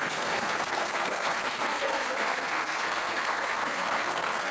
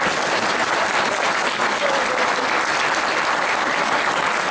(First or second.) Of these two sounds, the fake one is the first